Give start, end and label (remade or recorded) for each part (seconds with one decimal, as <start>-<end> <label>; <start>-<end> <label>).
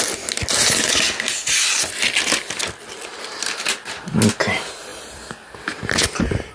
0.0-6.5 recorded